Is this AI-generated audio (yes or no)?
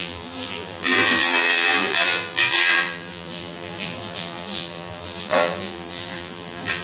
yes